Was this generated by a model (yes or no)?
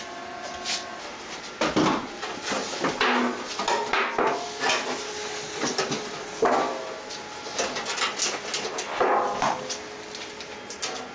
no